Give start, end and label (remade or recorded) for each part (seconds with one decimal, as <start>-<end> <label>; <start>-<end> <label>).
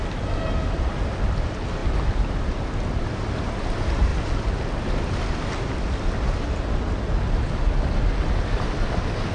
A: 0.0-9.3 recorded